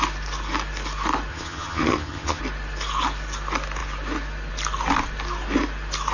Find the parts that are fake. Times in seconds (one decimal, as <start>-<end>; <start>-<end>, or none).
1.3-2.4